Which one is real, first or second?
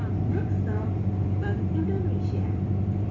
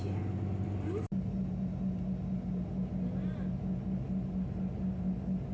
second